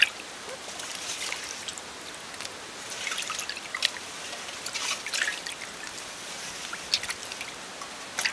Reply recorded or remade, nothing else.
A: recorded